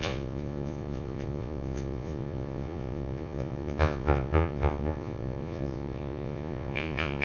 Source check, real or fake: fake